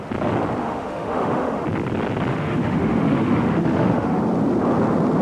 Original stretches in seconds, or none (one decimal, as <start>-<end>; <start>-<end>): 0.0-0.6; 1.6-2.3; 4.2-5.2